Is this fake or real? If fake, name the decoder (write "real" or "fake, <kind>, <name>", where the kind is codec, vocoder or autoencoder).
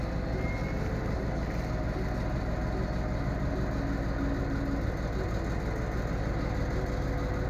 real